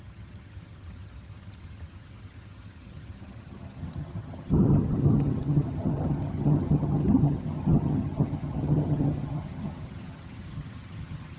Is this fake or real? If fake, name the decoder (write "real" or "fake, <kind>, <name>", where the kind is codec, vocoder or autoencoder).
fake, vocoder, HiFi-GAN